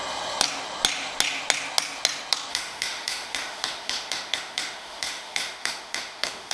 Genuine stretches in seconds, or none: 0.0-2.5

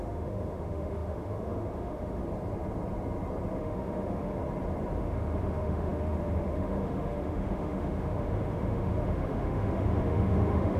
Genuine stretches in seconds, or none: 2.2-3.5; 4.4-5.0

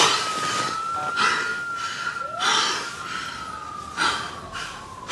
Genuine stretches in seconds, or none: 0.0-5.1

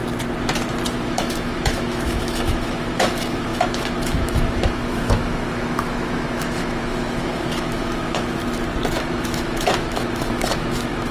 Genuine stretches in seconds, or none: 0.0-0.9; 8.4-9.0

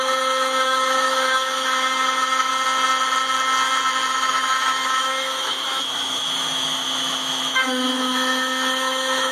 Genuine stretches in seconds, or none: 2.5-4.1